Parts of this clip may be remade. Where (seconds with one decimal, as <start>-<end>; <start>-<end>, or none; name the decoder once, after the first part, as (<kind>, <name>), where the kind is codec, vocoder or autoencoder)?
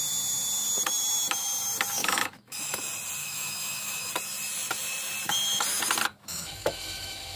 2.0-2.8 (autoencoder, DAC-VAE); 3.2-4.1; 6.1-7.4